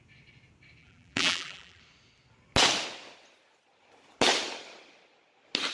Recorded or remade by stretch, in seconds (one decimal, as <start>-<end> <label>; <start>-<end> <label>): 0.0-0.8 recorded; 0.8-1.8 remade; 1.8-5.7 recorded

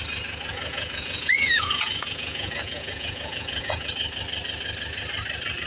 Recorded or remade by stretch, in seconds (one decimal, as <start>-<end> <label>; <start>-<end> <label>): 0.0-0.5 recorded; 0.5-3.9 remade; 3.9-5.7 recorded

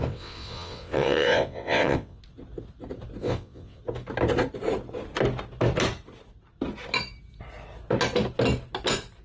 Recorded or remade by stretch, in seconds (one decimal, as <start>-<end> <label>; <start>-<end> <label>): 0.0-2.2 remade; 2.2-3.2 recorded; 3.2-3.8 remade; 3.8-9.2 recorded

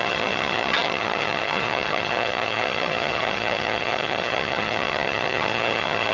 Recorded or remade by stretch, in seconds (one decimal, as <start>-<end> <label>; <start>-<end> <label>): 0.0-6.1 remade

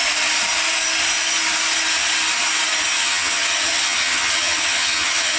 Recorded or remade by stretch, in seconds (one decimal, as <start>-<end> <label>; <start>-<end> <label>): 0.0-3.0 recorded; 3.0-5.4 remade

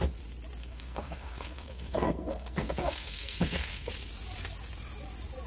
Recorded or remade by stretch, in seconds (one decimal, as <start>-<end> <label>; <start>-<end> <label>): 0.0-0.6 recorded; 0.6-3.9 remade; 3.9-5.5 recorded